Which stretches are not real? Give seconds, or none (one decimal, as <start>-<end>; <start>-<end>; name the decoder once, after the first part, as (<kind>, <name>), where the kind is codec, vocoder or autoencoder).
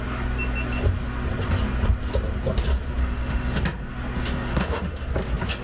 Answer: 3.0-3.6 (autoencoder, DAC-VAE); 4.2-5.1